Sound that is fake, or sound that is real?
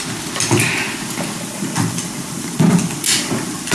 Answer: real